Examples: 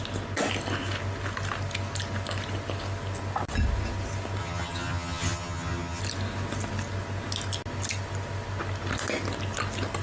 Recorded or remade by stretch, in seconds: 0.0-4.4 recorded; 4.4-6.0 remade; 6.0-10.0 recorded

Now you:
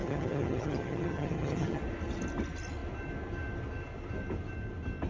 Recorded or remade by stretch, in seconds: 0.0-1.8 remade; 1.8-5.1 recorded

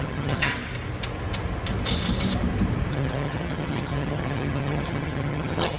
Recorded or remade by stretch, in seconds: 0.0-0.5 remade; 0.5-2.9 recorded; 2.9-5.8 remade

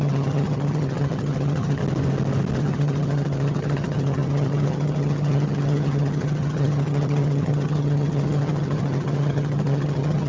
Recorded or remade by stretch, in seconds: 0.0-1.8 remade; 1.8-2.6 recorded; 2.6-10.3 remade

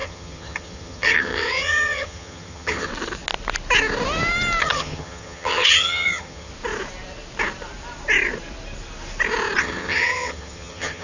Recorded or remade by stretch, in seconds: 0.0-2.9 remade; 2.9-4.6 recorded; 4.6-6.5 remade; 6.5-9.6 recorded; 9.6-11.0 remade